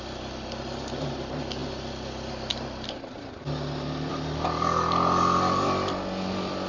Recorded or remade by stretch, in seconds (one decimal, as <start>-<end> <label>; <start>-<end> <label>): 0.0-6.7 recorded